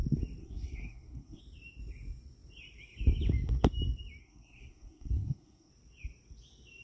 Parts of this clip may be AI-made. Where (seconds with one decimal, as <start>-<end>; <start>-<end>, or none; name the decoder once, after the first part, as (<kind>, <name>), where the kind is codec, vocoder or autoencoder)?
0.4-1.4 (codec, SNAC); 4.2-5.7